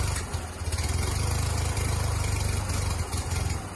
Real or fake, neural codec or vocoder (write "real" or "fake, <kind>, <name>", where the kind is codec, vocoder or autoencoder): real